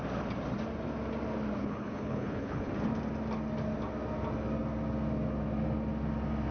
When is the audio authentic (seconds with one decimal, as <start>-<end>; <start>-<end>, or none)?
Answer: 0.0-1.6; 2.7-6.5